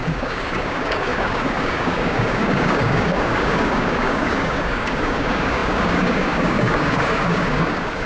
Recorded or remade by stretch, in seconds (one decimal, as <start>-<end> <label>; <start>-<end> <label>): 0.0-8.1 remade